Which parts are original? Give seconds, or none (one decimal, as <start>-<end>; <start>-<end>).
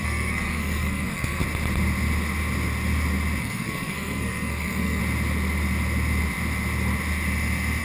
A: 1.4-3.4; 5.0-7.8